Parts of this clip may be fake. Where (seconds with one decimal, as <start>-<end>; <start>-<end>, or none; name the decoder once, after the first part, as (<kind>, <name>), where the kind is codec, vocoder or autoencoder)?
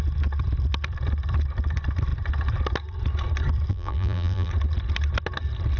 3.7-4.5 (vocoder, BigVGAN v2)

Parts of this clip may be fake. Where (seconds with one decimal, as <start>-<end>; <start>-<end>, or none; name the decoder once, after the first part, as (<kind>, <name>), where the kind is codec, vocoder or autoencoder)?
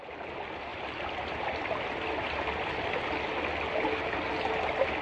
none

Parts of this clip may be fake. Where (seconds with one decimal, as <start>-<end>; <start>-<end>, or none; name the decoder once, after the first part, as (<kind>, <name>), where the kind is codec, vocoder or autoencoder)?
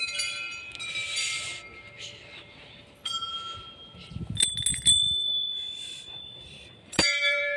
4.7-7.6 (vocoder, BigVGAN v2)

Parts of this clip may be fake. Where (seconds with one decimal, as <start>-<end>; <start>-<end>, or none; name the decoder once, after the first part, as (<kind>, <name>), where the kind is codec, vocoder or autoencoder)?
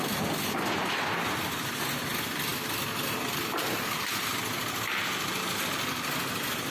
none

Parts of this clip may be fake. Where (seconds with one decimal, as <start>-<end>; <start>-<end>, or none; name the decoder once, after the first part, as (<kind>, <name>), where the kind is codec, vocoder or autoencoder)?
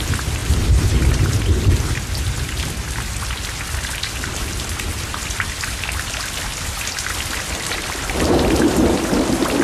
0.4-1.4 (vocoder, BigVGAN v2)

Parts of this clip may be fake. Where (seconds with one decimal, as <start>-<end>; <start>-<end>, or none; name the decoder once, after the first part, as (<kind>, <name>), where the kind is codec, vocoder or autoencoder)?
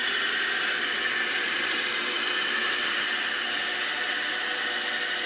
0.0-3.2 (vocoder, BigVGAN v2)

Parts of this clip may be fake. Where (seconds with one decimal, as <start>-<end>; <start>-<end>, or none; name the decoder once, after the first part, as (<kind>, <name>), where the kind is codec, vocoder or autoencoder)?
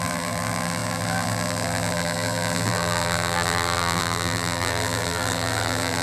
0.0-6.0 (vocoder, BigVGAN v2)